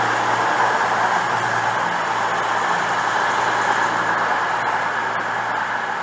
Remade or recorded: recorded